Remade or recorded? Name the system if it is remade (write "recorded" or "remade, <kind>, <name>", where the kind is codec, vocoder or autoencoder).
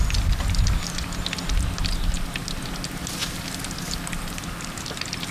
recorded